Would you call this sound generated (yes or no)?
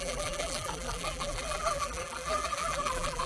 yes